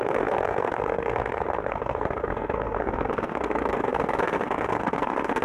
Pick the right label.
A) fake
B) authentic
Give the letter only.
A